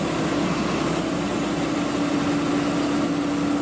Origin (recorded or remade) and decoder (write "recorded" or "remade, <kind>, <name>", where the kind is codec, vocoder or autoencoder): recorded